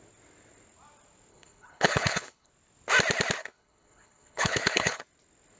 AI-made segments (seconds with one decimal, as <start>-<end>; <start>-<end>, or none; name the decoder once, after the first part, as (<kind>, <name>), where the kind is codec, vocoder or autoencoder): 1.3-2.5 (codec, HILCodec); 3.4-5.0